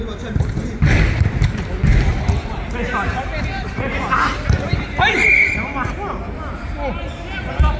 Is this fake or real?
real